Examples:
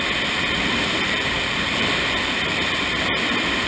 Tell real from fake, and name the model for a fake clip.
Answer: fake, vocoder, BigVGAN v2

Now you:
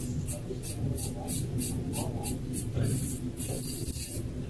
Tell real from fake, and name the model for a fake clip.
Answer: real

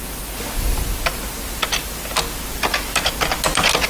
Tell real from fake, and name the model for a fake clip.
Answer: real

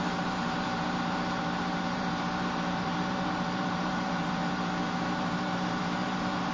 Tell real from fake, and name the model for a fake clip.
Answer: fake, vocoder, BigVGAN v2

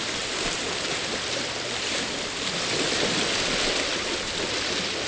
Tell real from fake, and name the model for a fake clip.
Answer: real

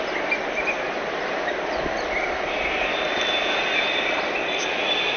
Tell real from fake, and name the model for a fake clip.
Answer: real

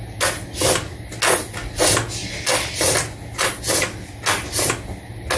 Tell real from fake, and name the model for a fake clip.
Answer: real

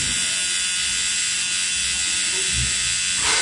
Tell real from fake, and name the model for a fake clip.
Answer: real